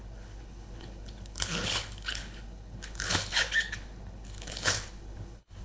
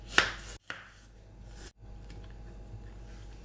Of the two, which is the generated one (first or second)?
first